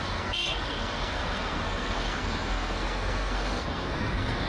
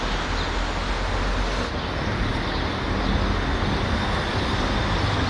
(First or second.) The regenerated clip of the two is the first